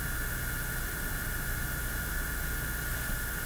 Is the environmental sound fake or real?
real